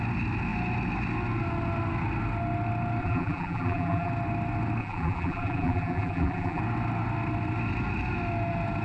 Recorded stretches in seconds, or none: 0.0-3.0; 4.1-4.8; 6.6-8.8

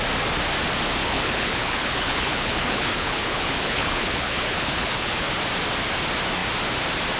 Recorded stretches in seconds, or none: 0.0-1.0; 5.3-7.2

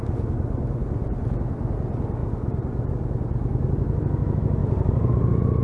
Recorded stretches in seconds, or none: 0.0-0.8; 1.3-2.2; 2.9-4.6; 5.1-5.6